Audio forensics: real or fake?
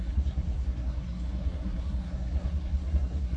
fake